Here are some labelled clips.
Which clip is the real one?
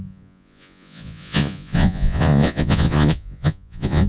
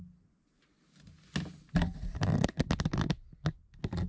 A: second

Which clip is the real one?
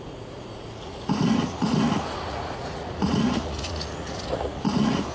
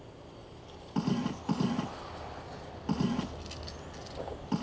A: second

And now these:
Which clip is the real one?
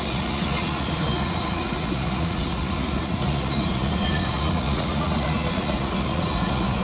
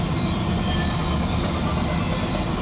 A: second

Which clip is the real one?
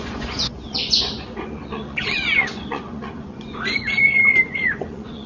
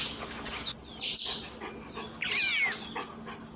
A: second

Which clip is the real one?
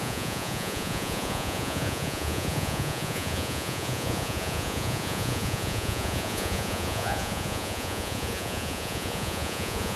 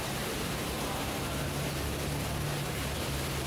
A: second